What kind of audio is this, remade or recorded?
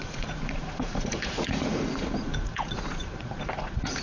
remade